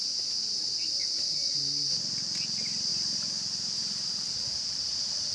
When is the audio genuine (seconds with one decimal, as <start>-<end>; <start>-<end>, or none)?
0.0-5.3